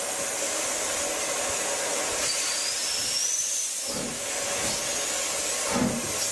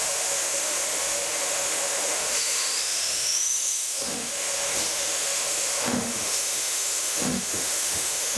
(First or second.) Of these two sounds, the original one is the first